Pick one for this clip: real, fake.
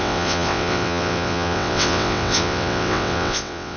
fake